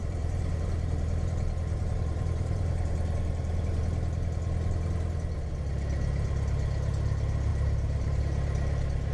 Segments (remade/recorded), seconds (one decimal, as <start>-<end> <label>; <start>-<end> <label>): 0.0-3.8 remade; 3.8-7.5 recorded; 7.5-8.2 remade; 8.2-9.1 recorded